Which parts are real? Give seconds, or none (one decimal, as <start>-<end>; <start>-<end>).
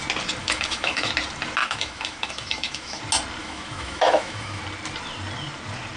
0.0-0.4; 1.1-1.6; 3.0-3.4; 4.6-6.0